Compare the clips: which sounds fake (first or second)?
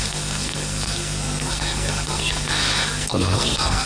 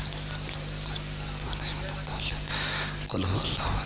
first